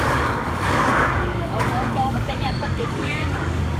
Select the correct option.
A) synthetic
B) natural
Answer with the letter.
A